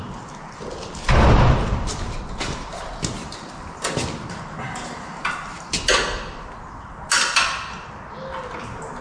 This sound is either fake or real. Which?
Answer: real